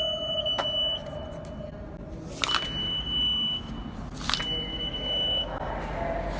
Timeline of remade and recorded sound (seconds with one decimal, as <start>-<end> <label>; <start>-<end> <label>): 0.0-2.8 recorded; 2.8-3.7 remade; 3.7-4.7 recorded; 4.7-5.7 remade; 5.7-6.4 recorded